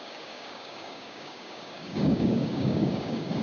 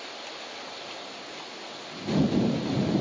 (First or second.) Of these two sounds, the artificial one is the first